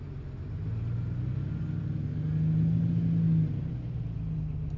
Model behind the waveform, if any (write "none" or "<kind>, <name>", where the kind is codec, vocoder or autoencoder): none